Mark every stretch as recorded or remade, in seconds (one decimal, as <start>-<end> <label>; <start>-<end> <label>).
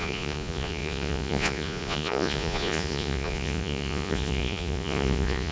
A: 0.0-5.5 remade